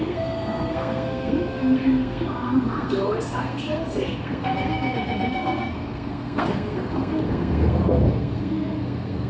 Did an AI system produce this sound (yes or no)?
yes